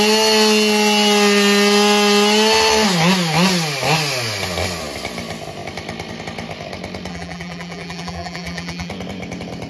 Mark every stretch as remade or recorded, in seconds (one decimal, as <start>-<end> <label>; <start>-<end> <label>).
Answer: 0.0-7.1 recorded; 7.1-8.9 remade; 8.9-9.7 recorded